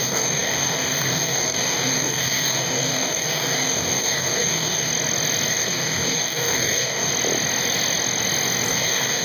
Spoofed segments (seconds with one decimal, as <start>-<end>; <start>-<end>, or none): 0.0-4.9; 5.5-7.1; 8.7-9.2